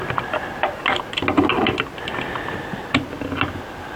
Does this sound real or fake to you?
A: real